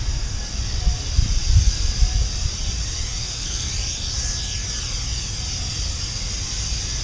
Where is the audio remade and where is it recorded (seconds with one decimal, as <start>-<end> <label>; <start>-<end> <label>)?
0.0-3.2 recorded; 3.2-3.7 remade; 3.7-7.0 recorded